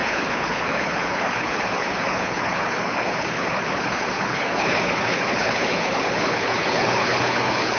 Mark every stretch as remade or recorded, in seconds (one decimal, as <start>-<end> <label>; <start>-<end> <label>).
0.0-7.8 remade